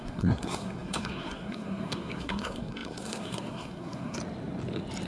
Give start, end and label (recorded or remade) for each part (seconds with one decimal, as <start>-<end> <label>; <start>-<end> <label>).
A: 0.0-4.2 remade; 4.2-5.1 recorded